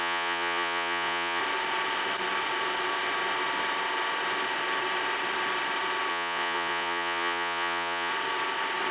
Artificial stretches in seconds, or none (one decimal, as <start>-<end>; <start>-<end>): 0.0-1.4; 6.1-8.1

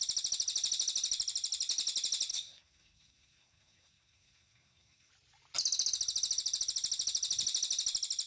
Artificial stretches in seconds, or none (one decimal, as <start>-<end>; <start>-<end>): 2.3-5.1